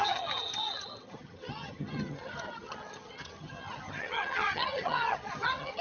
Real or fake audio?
fake